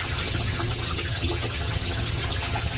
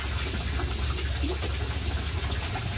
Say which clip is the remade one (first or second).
first